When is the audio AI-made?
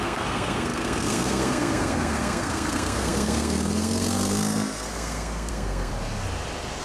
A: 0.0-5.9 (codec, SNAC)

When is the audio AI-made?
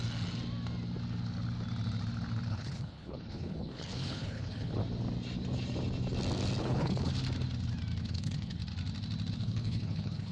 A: 2.5-4.8 (codec, HILCodec); 6.6-7.1; 8.0-8.6; 9.3-10.3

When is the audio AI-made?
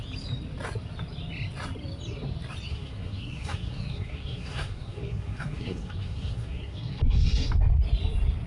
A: 2.7-7.5 (codec, SNAC)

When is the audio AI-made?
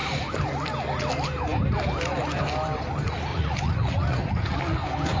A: 3.3-4.6 (vocoder, Vocos)